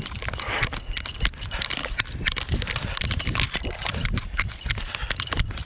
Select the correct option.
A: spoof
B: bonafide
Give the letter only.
B